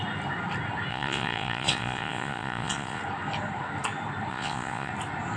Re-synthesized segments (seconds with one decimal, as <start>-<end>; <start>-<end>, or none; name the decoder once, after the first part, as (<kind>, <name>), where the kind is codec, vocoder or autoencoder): 0.9-3.0 (vocoder, Vocos); 4.3-4.9

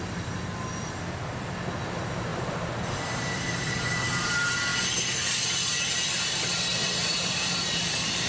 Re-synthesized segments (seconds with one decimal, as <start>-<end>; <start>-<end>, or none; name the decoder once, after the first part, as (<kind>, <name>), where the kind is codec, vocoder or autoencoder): 2.3-4.3 (vocoder, BigVGAN v2); 6.7-8.3

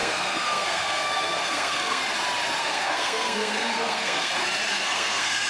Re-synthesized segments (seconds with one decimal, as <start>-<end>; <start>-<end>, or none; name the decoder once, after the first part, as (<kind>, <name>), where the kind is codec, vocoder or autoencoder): 0.0-2.0 (codec, SNAC); 2.6-4.3; 4.7-5.5

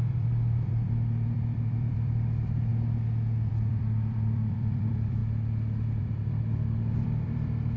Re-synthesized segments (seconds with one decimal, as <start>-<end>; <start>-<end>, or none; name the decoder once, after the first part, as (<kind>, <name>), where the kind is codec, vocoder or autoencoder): 0.0-2.7 (vocoder, BigVGAN v2); 3.5-5.2; 6.0-7.8